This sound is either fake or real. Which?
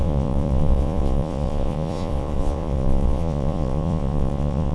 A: fake